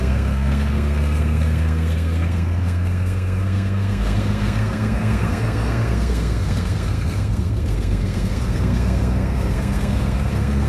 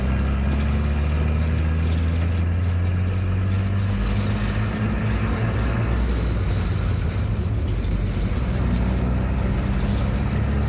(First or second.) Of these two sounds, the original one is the second